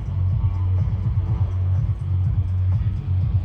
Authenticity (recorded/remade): recorded